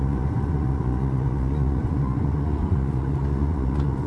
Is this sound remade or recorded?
remade